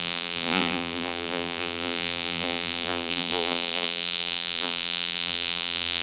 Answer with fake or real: fake